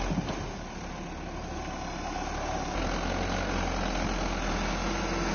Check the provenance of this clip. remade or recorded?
recorded